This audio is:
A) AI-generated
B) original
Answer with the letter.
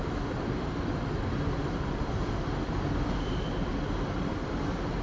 B